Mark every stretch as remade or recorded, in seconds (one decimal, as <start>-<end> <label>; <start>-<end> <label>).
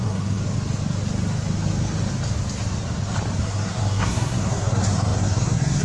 0.0-0.4 remade; 0.4-3.4 recorded; 3.4-5.8 remade